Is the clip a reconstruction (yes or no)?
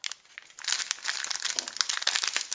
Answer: no